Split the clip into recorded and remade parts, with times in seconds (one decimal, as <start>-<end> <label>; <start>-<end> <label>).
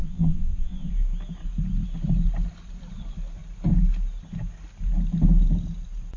0.0-0.9 remade; 0.9-6.2 recorded